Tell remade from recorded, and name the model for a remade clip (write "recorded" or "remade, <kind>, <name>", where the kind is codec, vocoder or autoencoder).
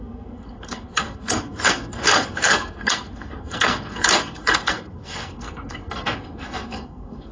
remade, codec, SNAC